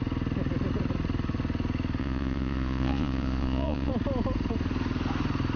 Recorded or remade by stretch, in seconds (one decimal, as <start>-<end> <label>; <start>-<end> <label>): 0.0-2.0 recorded; 2.0-3.9 remade; 3.9-5.6 recorded

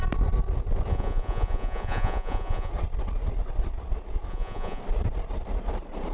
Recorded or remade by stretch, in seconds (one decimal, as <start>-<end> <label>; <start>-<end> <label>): 0.0-0.9 recorded; 0.9-2.7 remade; 2.7-4.3 recorded; 4.3-4.8 remade; 4.8-6.1 recorded

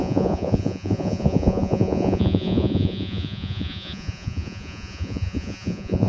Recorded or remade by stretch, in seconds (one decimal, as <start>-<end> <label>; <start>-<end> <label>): 0.0-6.1 remade

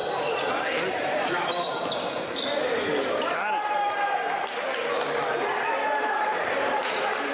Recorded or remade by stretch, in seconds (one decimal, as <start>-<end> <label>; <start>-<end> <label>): 0.0-0.9 recorded; 0.9-1.7 remade; 1.7-6.1 recorded; 6.1-7.3 remade